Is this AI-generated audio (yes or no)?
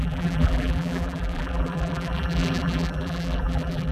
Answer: yes